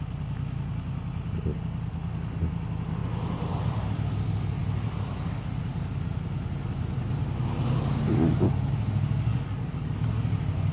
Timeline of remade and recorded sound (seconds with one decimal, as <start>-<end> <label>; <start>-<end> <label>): 0.0-9.3 recorded; 9.3-10.7 remade